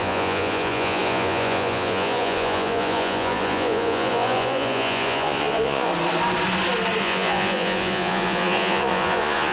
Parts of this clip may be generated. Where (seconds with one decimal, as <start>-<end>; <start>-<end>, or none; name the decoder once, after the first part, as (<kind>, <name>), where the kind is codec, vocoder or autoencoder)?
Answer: 0.0-5.9 (vocoder, Vocos); 7.0-9.5